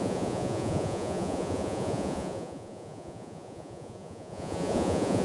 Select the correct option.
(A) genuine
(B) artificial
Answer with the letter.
B